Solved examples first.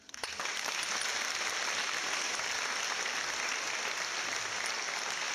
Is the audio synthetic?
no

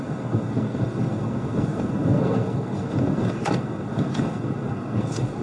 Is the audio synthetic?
yes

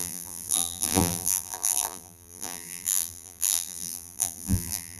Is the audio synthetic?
yes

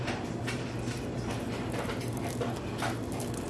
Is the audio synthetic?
no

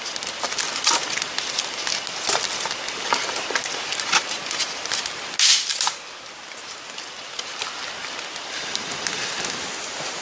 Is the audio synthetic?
no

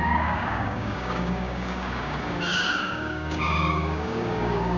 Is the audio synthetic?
yes